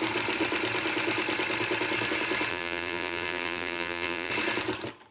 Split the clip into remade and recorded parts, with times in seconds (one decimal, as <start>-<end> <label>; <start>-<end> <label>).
0.0-2.5 recorded; 2.5-4.3 remade; 4.3-5.1 recorded